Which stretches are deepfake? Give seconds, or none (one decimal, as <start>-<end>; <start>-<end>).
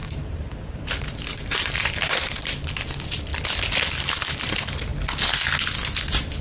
0.0-2.9